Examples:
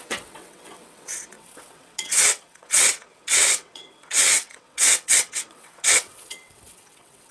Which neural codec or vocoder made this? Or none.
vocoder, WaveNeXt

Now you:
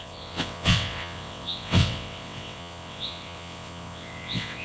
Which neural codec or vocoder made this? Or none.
vocoder, WaveNeXt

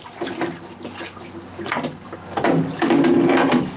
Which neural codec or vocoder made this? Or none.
none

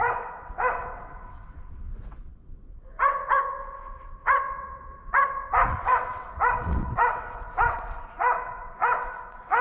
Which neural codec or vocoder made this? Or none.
vocoder, WaveNeXt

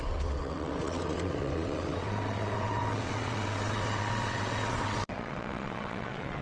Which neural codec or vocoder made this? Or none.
vocoder, WaveNeXt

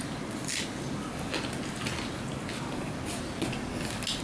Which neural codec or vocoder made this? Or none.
none